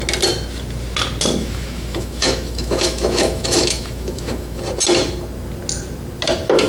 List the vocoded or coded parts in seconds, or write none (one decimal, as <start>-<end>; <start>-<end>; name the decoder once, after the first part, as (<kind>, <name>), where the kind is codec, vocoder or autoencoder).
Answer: 1.4-4.6 (autoencoder, DAC-VAE)